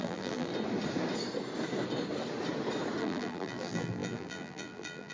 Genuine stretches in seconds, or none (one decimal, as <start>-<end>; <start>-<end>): 0.5-3.0